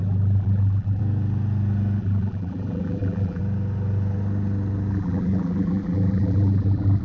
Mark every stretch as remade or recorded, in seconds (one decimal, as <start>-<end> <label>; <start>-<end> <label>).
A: 0.0-1.0 remade; 1.0-2.0 recorded; 2.0-3.4 remade; 3.4-4.9 recorded; 4.9-7.0 remade